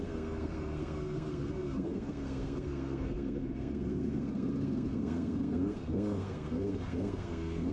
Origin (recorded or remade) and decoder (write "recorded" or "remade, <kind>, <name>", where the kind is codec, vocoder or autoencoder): remade, codec, SNAC